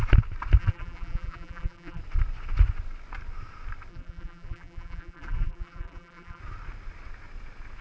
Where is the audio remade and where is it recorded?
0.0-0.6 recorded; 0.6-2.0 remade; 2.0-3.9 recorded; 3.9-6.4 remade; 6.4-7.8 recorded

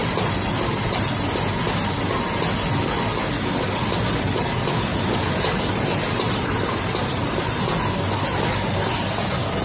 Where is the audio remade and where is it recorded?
0.0-1.1 remade; 1.1-4.9 recorded; 4.9-7.5 remade; 7.5-9.6 recorded

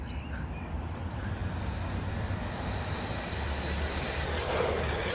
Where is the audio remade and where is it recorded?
0.0-1.4 remade; 1.4-4.5 recorded; 4.5-5.1 remade

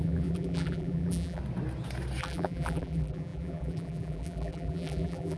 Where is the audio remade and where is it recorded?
0.0-1.4 remade; 1.4-2.2 recorded; 2.2-5.4 remade

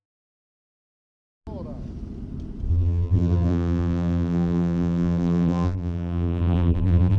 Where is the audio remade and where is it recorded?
0.0-2.7 recorded; 2.7-7.2 remade

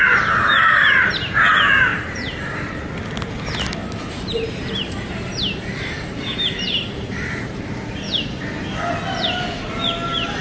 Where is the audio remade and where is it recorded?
0.0-1.9 recorded; 1.9-2.8 remade; 2.8-3.8 recorded; 3.8-7.7 remade; 7.7-10.4 recorded